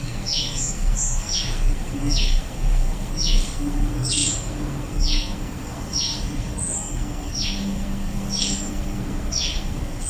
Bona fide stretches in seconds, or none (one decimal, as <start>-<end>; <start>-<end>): none